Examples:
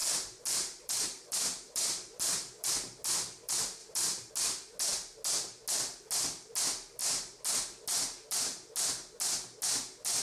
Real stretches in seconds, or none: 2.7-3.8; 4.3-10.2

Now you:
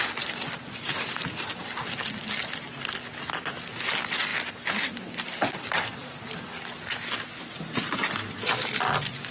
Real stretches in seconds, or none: 0.0-9.3

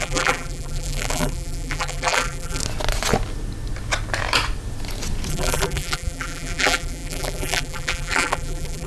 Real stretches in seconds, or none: 2.6-5.3